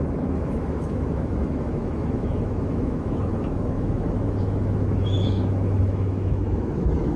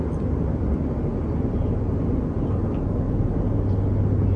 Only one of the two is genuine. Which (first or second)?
second